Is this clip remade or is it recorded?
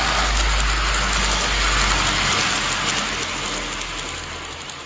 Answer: recorded